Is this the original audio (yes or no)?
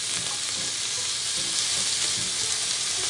yes